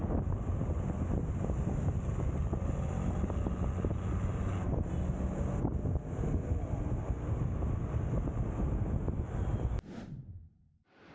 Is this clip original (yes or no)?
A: yes